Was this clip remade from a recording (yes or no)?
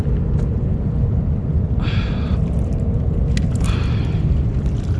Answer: no